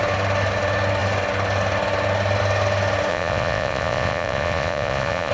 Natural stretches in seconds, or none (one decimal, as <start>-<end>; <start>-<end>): 0.0-3.1